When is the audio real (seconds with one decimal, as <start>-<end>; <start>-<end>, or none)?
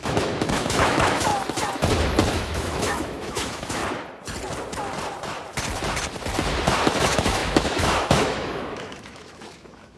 1.3-2.3; 3.8-7.0